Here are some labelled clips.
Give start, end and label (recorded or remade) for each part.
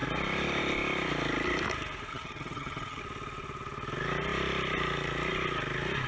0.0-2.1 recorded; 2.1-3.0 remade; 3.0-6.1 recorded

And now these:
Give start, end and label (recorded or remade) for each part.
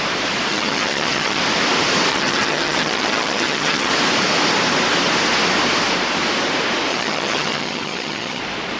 0.0-0.5 recorded; 0.5-1.4 remade; 1.4-2.1 recorded; 2.1-3.9 remade; 3.9-6.9 recorded; 6.9-8.4 remade; 8.4-8.8 recorded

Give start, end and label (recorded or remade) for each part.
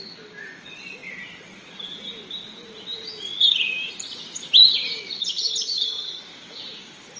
0.0-5.2 recorded; 5.2-6.2 remade; 6.2-7.2 recorded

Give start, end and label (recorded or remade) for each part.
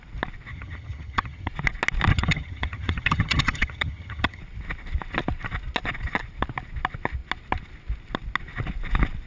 0.0-0.5 recorded; 0.5-1.5 remade; 1.5-2.1 recorded; 2.1-4.4 remade; 4.4-9.3 recorded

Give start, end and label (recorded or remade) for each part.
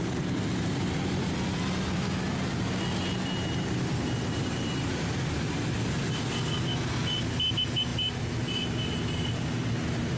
0.0-10.2 recorded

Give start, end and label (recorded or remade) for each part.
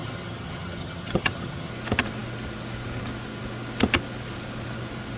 0.0-1.7 remade; 1.7-5.2 recorded